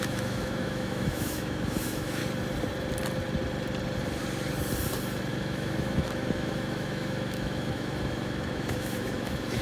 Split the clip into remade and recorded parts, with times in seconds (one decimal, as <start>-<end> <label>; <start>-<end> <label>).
0.0-2.2 remade; 2.2-5.3 recorded; 5.3-9.6 remade